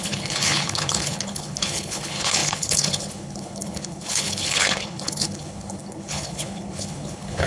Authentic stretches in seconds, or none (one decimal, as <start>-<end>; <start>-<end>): none

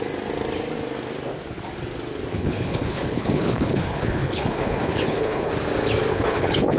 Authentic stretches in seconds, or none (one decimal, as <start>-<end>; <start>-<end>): 0.0-2.3; 5.5-6.1

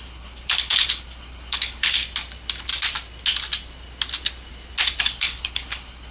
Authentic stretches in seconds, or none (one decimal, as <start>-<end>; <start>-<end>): 2.0-5.0